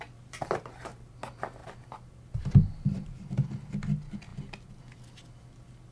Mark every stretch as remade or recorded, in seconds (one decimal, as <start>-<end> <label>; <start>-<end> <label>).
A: 0.0-1.6 recorded; 1.6-3.7 remade; 3.7-5.9 recorded